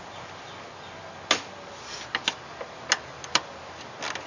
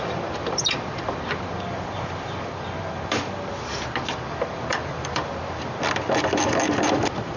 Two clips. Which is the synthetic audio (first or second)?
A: second